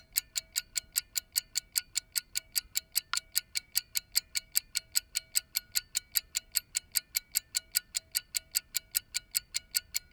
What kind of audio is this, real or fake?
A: real